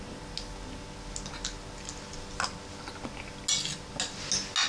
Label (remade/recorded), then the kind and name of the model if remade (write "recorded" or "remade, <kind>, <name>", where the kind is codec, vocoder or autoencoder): recorded